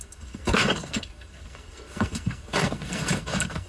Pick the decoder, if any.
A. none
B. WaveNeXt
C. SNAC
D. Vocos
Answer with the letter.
C